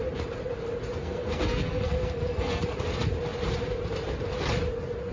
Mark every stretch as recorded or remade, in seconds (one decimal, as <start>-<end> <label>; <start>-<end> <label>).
0.0-1.0 recorded; 1.0-2.6 remade; 2.6-5.1 recorded